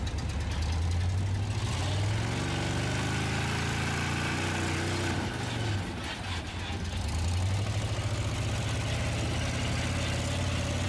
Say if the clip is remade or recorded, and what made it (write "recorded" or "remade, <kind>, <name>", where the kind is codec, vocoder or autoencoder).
recorded